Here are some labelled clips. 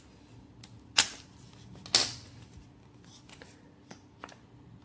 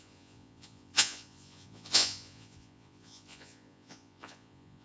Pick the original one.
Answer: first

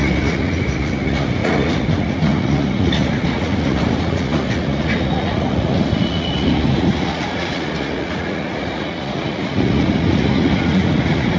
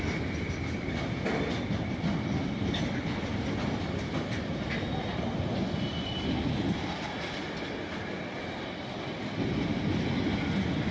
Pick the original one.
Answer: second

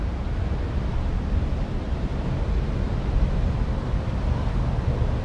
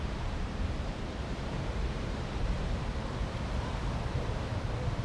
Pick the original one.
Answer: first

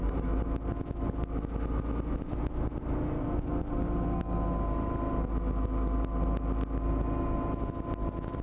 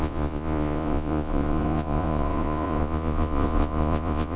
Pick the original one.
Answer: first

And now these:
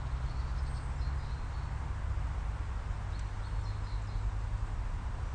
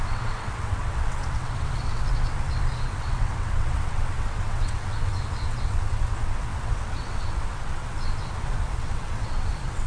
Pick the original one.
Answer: first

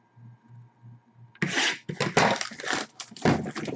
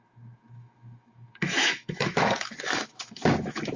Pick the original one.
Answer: first